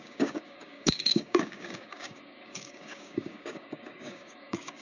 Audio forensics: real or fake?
fake